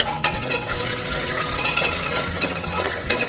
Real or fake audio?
fake